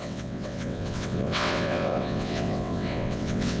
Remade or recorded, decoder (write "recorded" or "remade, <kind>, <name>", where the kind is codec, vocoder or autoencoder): remade, vocoder, WaveNeXt